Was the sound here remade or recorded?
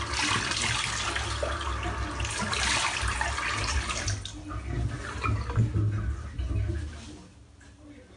recorded